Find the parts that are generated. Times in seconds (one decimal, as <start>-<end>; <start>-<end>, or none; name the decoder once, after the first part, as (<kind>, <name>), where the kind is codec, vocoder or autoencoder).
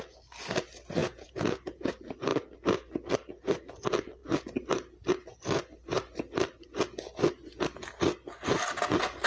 1.0-1.9 (vocoder, Vocos)